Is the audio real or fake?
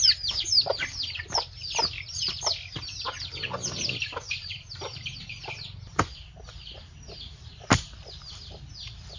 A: fake